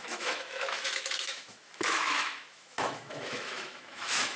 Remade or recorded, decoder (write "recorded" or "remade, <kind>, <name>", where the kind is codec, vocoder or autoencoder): remade, autoencoder, DAC-VAE